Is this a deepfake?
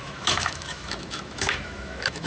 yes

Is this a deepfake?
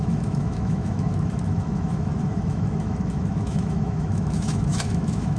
yes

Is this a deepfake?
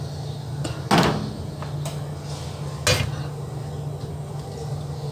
no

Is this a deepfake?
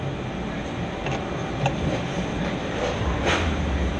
no